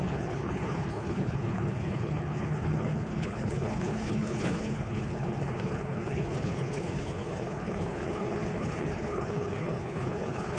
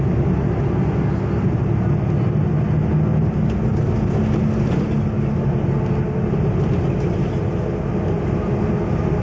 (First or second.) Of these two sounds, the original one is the second